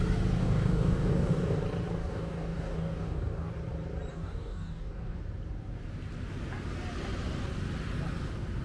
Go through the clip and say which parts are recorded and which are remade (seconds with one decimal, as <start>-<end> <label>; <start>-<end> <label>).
0.0-0.4 recorded; 0.4-1.6 remade; 1.6-2.0 recorded; 2.0-3.5 remade; 3.5-4.1 recorded; 4.1-5.2 remade; 5.2-8.6 recorded